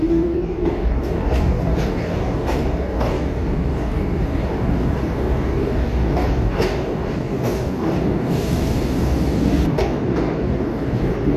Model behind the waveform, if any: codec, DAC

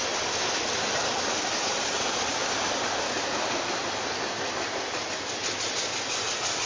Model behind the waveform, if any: none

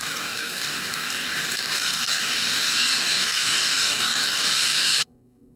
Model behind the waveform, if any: codec, DAC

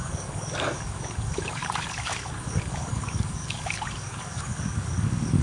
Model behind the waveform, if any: codec, DAC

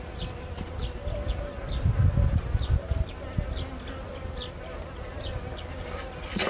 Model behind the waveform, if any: none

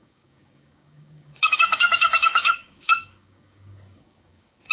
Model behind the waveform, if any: codec, DAC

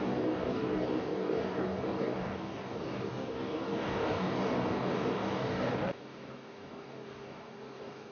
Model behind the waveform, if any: codec, DAC